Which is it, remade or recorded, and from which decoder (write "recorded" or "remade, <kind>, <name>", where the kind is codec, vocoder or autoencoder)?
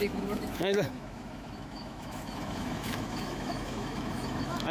remade, autoencoder, DAC-VAE